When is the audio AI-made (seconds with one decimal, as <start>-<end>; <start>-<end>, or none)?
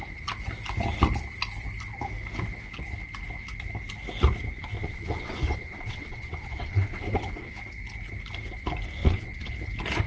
4.8-7.5; 9.0-9.5